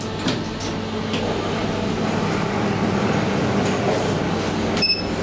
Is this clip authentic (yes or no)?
yes